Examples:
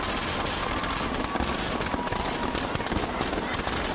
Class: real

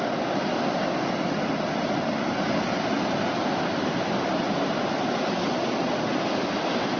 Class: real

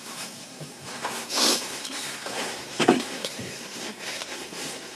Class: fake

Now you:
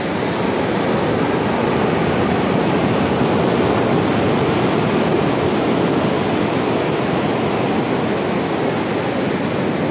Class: real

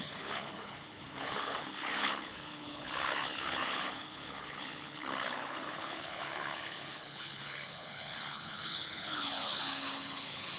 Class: fake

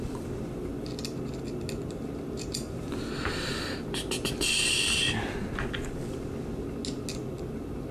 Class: real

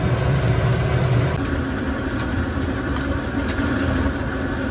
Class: real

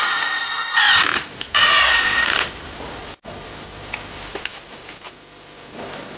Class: real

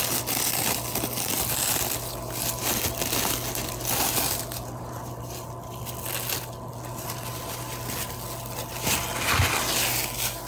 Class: real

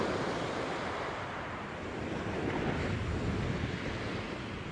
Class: real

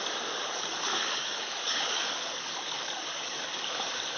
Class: fake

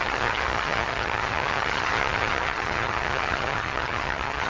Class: fake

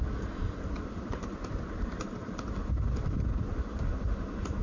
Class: real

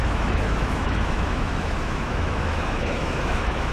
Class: fake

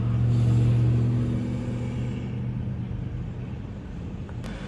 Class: real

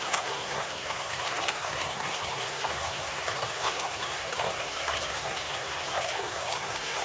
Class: fake